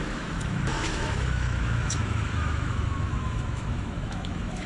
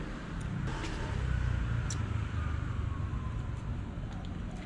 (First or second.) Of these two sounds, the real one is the second